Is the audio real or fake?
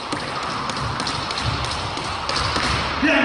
real